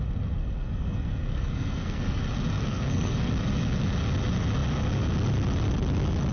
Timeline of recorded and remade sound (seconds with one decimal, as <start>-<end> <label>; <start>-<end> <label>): 0.0-0.4 recorded; 0.4-2.2 remade; 2.2-2.6 recorded; 2.6-3.3 remade; 3.3-6.3 recorded